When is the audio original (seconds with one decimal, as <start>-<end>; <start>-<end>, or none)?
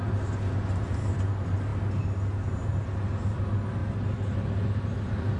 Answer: 0.0-5.4